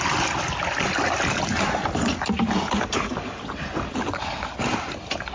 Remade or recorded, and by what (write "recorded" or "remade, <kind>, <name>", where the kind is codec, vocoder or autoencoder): recorded